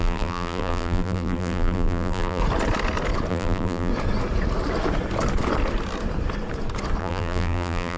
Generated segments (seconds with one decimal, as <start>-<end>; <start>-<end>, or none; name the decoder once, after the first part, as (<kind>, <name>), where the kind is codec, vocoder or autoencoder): 0.0-2.4 (vocoder, BigVGAN v2); 3.3-3.9; 7.0-8.0